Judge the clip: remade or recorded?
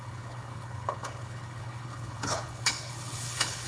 remade